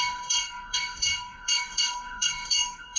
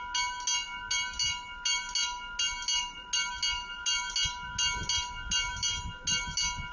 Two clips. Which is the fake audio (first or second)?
first